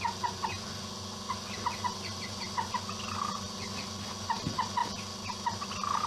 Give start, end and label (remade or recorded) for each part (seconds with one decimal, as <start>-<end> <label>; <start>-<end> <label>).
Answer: 0.0-6.1 recorded